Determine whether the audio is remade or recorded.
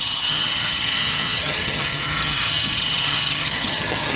remade